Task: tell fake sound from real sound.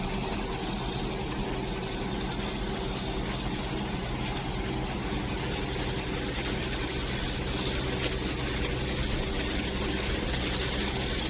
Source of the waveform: real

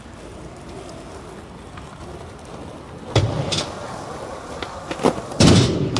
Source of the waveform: real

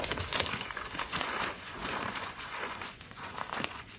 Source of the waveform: fake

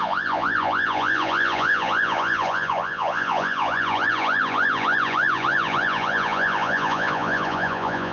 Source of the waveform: fake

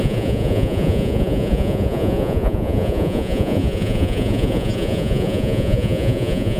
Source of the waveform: fake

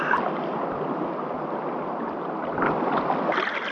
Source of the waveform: real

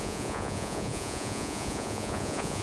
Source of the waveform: fake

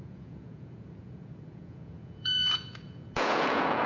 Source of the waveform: fake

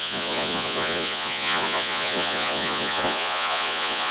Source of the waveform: fake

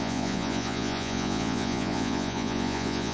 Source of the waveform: fake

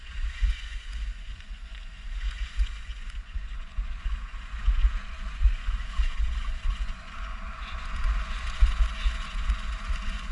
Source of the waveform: fake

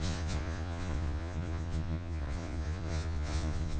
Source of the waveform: fake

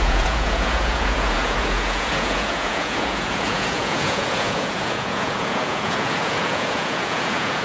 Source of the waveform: fake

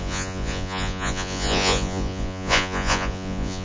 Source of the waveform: fake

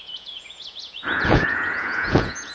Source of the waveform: fake